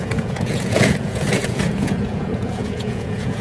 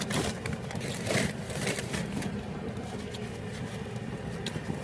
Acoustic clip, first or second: second